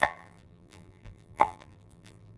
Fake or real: fake